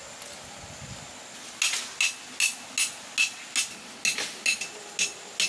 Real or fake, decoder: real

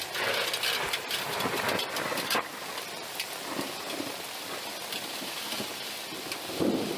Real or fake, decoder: real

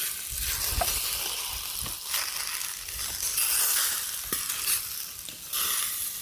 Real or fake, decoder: real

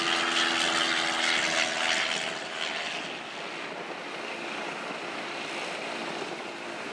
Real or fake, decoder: real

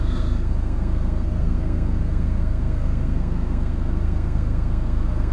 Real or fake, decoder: fake, codec, SNAC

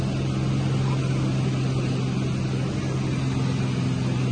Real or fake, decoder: real